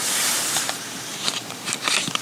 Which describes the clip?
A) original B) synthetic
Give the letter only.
B